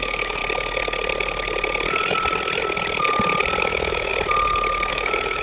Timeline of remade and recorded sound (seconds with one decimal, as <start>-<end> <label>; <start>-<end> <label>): 0.0-0.4 remade; 0.4-3.6 recorded; 3.6-4.1 remade; 4.1-4.9 recorded; 4.9-5.4 remade